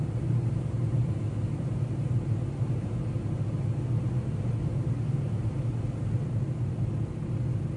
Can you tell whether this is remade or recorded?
recorded